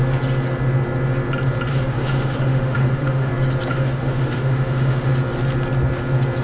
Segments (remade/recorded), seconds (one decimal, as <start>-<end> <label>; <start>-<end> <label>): 0.0-1.7 recorded; 1.7-3.3 remade; 3.3-3.7 recorded; 3.7-5.1 remade; 5.1-6.4 recorded